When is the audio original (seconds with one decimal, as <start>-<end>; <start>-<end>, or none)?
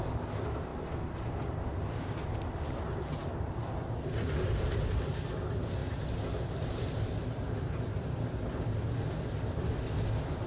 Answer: 0.0-10.5